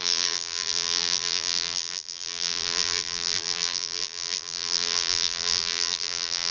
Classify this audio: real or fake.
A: fake